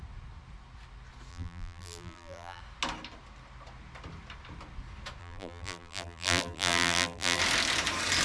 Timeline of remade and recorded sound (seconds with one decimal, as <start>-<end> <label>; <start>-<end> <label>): 0.0-1.3 recorded; 1.3-2.6 remade; 2.6-5.2 recorded; 5.2-7.4 remade; 7.4-8.2 recorded